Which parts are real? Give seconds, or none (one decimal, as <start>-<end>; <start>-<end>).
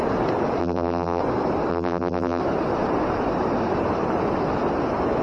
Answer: 0.0-0.6; 1.2-1.7; 2.4-5.2